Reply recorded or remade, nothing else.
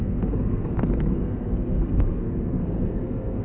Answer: remade